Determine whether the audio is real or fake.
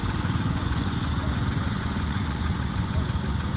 fake